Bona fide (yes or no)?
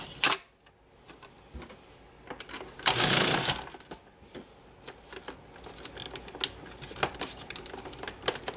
yes